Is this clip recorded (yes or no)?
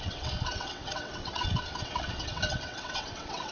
no